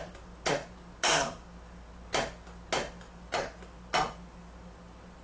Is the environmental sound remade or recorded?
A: recorded